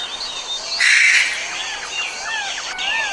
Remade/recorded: recorded